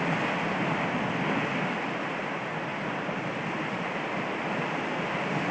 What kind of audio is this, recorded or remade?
recorded